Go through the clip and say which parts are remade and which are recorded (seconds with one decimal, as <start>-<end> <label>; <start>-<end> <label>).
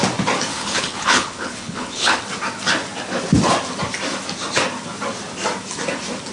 0.0-0.5 recorded; 0.5-2.2 remade; 2.2-6.3 recorded